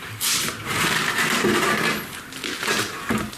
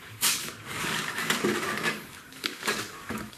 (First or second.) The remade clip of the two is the second